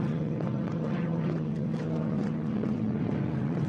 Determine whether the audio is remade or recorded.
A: remade